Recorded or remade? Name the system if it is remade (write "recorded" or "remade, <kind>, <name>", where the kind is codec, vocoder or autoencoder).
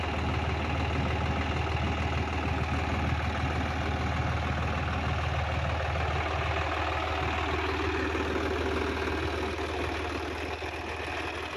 recorded